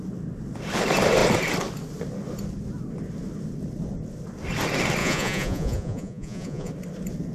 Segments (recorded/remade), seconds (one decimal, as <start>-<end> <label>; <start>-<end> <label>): 0.0-5.0 recorded; 5.0-6.7 remade; 6.7-7.3 recorded